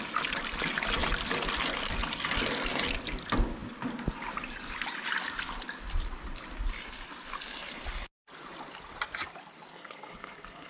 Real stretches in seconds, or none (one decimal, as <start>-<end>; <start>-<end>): 0.0-9.7